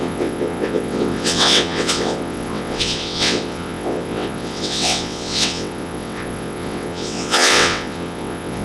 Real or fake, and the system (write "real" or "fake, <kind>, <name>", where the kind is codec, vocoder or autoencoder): fake, vocoder, WaveNeXt